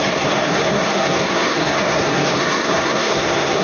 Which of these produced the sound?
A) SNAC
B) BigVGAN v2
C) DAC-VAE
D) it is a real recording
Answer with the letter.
A